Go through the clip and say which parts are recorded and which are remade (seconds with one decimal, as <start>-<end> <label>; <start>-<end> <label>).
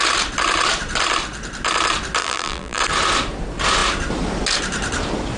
0.0-2.2 recorded; 2.2-2.8 remade; 2.8-5.4 recorded